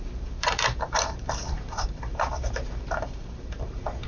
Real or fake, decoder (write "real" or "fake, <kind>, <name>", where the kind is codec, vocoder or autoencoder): fake, vocoder, BigVGAN v2